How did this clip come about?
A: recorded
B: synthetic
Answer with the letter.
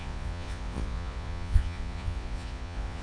B